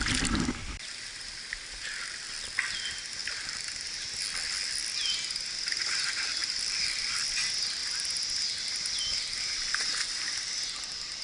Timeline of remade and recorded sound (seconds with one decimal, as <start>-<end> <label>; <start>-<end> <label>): 0.0-0.6 recorded; 0.6-2.0 remade; 2.0-6.4 recorded; 6.4-7.0 remade; 7.0-7.8 recorded; 7.8-9.1 remade; 9.1-11.2 recorded